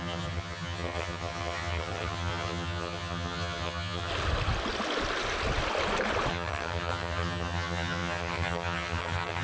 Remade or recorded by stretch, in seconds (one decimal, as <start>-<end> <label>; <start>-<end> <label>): 0.0-4.1 remade; 4.1-6.3 recorded; 6.3-9.4 remade